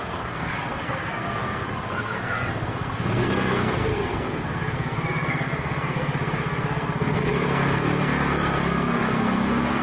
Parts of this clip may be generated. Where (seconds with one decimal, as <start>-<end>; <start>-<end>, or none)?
0.0-9.8